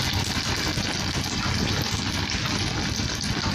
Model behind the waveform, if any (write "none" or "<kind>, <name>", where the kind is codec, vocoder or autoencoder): none